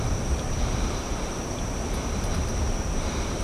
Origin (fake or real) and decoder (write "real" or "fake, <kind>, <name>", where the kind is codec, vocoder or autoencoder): fake, vocoder, BigVGAN v2